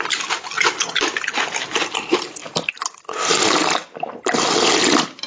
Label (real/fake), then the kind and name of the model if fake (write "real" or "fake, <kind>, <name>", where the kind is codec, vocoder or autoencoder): real